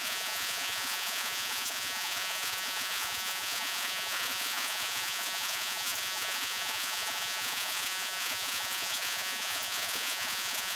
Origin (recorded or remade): remade